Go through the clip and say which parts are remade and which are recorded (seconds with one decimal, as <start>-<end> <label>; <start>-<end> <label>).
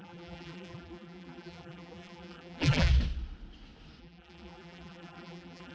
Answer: 0.0-2.9 remade; 2.9-4.0 recorded; 4.0-5.7 remade